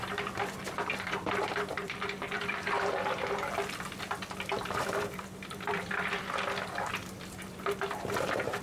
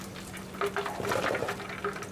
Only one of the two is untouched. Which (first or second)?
second